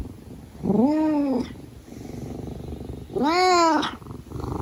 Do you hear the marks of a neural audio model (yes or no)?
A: no